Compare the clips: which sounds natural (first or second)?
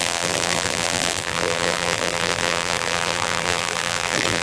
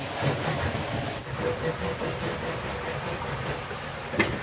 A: second